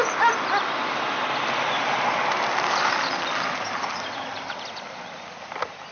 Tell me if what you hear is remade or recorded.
recorded